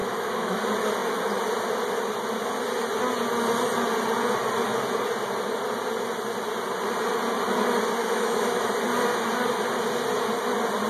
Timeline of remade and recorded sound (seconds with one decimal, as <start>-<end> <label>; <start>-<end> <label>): 0.0-0.6 remade; 0.6-8.0 recorded; 8.0-8.7 remade; 8.7-10.9 recorded